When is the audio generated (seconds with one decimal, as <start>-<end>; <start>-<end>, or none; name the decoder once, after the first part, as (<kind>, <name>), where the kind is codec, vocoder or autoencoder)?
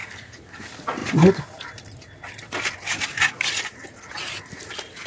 0.0-0.6 (codec, DAC)